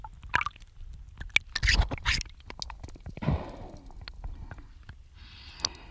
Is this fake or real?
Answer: real